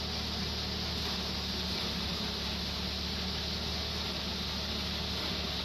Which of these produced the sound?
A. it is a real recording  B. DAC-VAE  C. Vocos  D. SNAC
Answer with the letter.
A